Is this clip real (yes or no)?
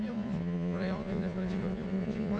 no